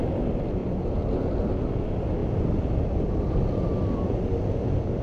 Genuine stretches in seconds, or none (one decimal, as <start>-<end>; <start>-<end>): 0.0-0.6; 1.1-2.2; 2.7-5.0